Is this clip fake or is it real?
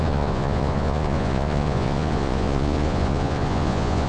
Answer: fake